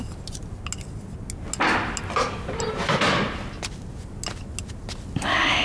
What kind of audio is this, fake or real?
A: real